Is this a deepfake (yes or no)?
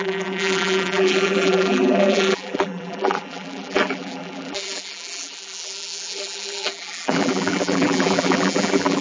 yes